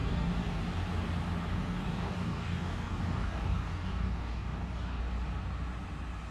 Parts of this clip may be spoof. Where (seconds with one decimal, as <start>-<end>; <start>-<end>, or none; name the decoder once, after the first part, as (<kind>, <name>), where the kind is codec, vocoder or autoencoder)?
0.0-0.6 (codec, DAC); 1.5-5.0